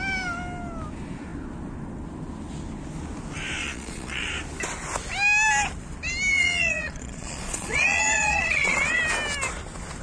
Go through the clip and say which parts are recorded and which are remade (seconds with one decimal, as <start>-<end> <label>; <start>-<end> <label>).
0.0-3.6 recorded; 3.6-4.3 remade; 4.3-6.3 recorded; 6.3-9.0 remade; 9.0-10.0 recorded